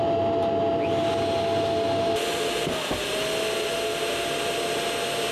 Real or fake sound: real